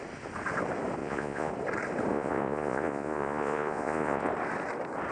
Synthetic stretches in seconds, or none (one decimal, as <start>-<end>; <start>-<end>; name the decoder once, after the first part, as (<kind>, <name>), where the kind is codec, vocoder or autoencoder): 1.0-1.5 (vocoder, Vocos); 2.1-4.3